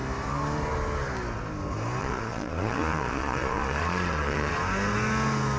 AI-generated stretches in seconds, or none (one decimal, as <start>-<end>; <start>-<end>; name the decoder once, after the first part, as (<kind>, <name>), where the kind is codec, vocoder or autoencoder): 2.0-4.5 (vocoder, Vocos)